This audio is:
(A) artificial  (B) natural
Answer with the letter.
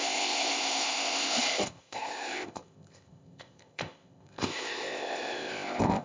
A